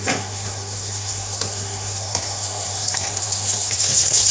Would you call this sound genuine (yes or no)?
no